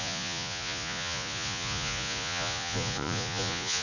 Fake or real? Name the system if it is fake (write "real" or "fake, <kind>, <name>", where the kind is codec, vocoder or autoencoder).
fake, vocoder, Vocos